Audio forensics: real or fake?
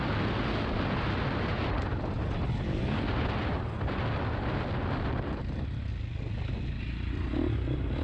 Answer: real